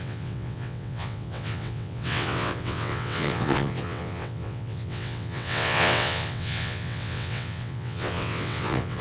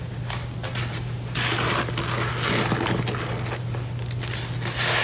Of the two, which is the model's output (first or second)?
first